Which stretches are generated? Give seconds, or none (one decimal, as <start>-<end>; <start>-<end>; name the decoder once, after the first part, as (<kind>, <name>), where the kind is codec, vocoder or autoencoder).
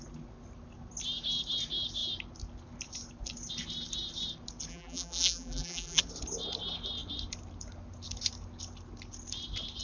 4.7-6.0 (vocoder, BigVGAN v2)